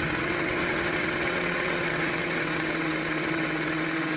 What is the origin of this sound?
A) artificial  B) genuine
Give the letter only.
A